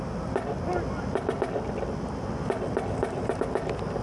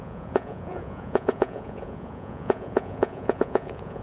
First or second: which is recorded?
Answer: first